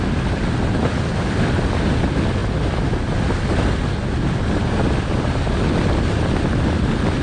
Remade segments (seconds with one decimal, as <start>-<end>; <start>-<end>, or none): none

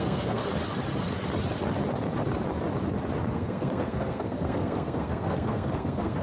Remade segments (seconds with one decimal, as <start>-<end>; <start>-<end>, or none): 0.0-0.4; 3.2-6.2